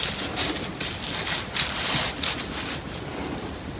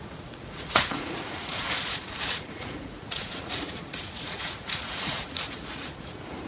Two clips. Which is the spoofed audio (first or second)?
second